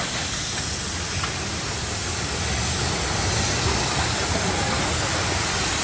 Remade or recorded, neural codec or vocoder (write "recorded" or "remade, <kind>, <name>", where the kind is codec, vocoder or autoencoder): recorded